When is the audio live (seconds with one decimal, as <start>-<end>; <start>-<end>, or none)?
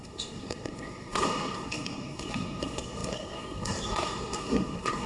none